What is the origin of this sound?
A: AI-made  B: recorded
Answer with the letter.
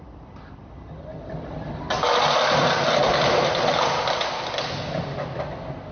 B